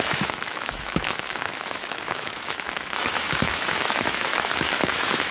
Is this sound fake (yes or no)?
yes